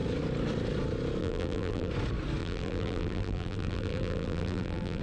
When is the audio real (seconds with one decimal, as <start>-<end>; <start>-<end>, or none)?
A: 0.0-1.2; 1.9-2.4